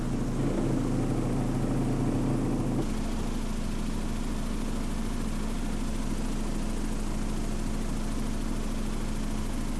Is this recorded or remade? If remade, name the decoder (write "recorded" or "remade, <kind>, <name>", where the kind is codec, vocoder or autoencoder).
recorded